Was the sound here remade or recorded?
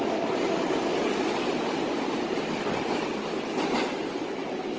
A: recorded